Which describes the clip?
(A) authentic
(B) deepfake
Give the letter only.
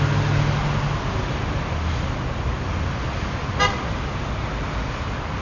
A